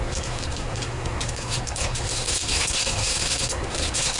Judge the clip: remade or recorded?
remade